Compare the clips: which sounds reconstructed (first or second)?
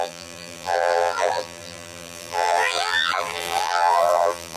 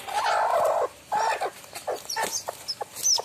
first